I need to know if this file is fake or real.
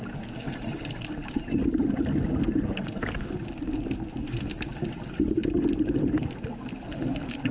real